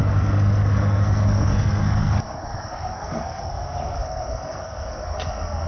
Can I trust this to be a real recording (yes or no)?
no